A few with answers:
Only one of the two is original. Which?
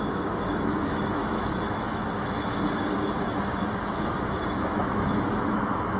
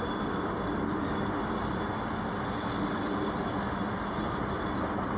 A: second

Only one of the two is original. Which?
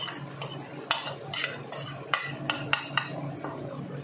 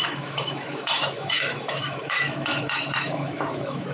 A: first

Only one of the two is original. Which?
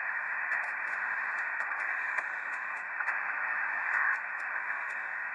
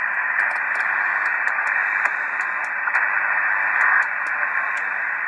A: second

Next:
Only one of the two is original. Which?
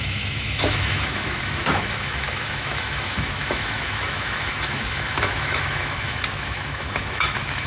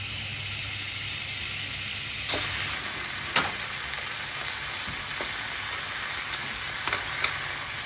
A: second